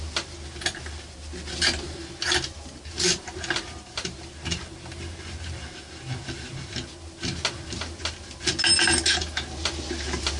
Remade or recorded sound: recorded